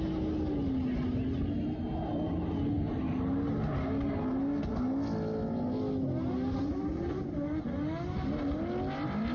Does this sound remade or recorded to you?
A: recorded